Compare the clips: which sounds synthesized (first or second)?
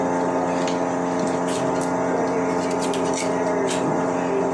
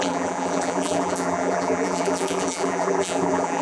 second